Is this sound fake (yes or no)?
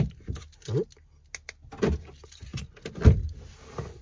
no